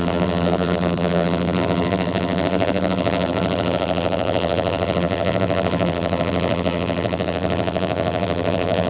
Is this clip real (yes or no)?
no